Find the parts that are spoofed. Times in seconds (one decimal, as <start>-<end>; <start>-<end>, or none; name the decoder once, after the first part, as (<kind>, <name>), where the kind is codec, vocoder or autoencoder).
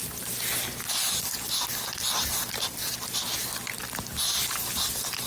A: none